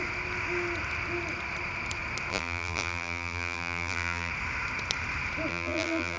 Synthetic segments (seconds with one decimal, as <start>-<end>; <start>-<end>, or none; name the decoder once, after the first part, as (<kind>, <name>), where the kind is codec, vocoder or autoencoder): 2.3-4.3 (vocoder, BigVGAN v2); 5.5-6.2